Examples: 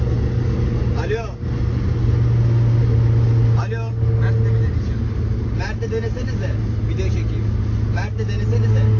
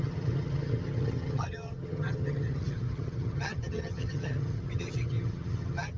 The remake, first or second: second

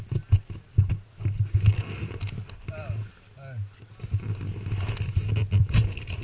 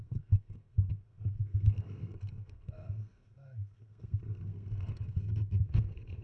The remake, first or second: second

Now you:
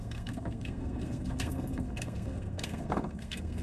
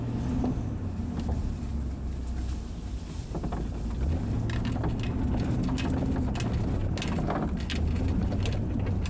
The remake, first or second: first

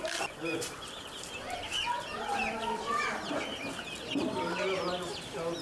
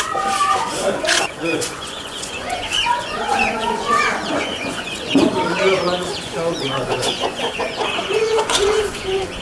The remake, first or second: second